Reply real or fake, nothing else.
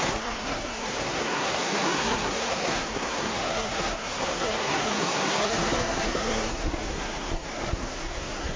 fake